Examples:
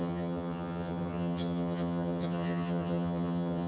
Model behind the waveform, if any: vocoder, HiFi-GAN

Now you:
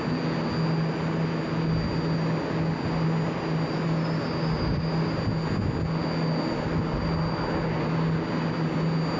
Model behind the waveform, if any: none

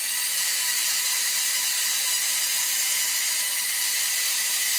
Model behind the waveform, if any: none